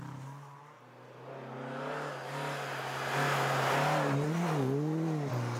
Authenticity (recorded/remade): recorded